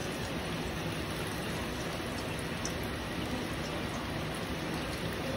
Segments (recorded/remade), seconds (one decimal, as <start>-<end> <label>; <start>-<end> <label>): 0.0-0.7 remade; 0.7-5.4 recorded